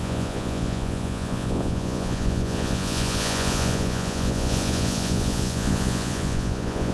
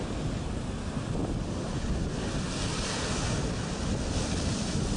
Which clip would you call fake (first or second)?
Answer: first